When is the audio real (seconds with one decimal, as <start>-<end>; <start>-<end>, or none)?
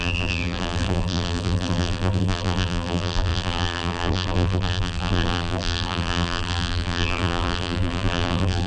none